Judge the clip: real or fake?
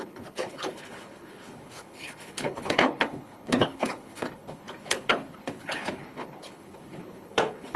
fake